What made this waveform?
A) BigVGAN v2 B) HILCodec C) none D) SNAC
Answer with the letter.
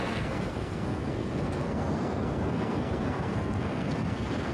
D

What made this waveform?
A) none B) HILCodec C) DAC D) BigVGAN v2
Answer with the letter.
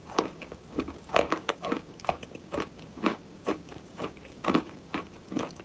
C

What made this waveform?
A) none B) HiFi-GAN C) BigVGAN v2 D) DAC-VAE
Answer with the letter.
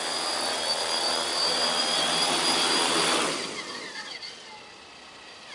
A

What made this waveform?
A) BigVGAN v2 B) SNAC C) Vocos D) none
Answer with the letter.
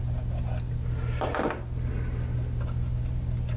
D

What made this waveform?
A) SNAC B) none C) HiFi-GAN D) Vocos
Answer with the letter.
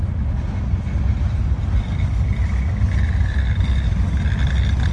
B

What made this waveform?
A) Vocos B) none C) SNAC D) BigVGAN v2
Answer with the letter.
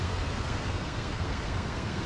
C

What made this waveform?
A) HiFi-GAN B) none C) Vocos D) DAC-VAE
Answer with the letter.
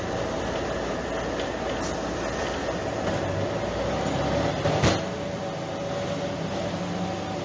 B